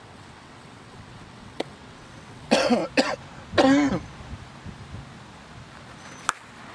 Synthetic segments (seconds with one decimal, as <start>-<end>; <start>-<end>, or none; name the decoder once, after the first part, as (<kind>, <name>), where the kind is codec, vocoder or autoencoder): 0.0-2.8 (vocoder, WaveNeXt)